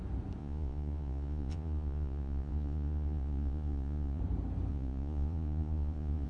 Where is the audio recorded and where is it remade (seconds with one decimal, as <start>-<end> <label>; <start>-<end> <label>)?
0.0-0.4 recorded; 0.4-4.2 remade; 4.2-4.7 recorded; 4.7-6.3 remade